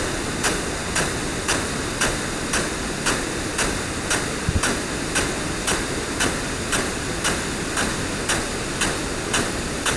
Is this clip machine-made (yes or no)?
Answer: no